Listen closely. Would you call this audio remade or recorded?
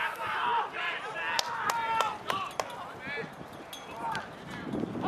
recorded